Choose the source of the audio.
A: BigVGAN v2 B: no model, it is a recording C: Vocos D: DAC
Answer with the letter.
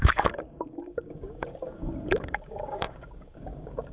D